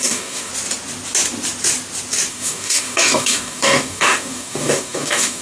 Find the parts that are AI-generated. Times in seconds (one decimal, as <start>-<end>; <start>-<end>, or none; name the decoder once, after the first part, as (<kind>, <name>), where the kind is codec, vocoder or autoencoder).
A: 0.0-0.5 (codec, DAC); 2.3-5.4